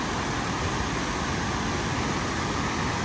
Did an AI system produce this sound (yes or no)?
no